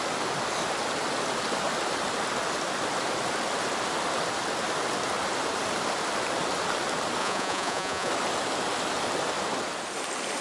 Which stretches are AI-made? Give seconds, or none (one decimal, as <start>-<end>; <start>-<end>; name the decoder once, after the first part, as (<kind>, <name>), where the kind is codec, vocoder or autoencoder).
7.2-8.1 (vocoder, Vocos)